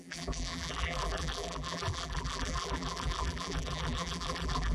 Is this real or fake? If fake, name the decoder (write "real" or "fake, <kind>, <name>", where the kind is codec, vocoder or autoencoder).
fake, vocoder, BigVGAN v2